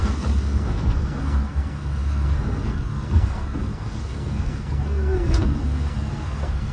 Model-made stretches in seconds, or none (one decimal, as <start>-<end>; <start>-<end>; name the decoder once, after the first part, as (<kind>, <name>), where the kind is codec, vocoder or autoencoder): 0.0-6.7 (codec, SNAC)